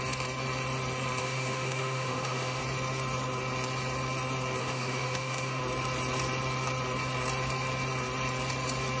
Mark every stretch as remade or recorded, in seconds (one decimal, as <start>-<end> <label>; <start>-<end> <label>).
0.0-1.2 recorded; 1.2-2.6 remade; 2.6-4.6 recorded; 4.6-5.6 remade; 5.6-9.0 recorded